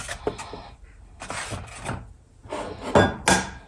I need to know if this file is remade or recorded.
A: recorded